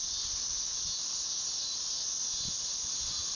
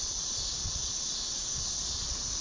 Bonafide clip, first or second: first